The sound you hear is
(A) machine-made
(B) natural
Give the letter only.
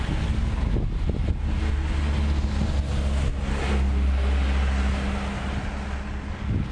B